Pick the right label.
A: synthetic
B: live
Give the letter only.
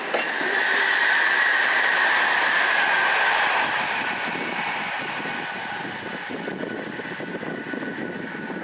A